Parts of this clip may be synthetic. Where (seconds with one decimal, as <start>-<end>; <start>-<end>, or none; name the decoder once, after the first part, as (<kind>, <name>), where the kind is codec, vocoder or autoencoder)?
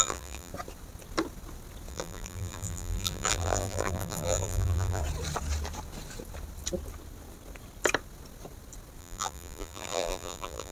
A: 0.0-0.5 (vocoder, BigVGAN v2); 1.9-5.0; 9.0-10.7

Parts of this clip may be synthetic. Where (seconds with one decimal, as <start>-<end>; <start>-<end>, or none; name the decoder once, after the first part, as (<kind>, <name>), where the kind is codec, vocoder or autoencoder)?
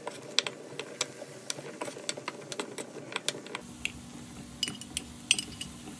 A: none